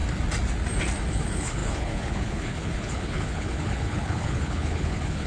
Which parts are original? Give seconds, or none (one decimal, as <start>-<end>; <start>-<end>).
0.0-1.1